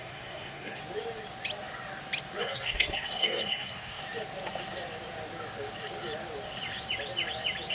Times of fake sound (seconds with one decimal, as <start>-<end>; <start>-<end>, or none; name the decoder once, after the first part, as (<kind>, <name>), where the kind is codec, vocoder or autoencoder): 0.0-0.8 (codec, SNAC); 2.4-4.0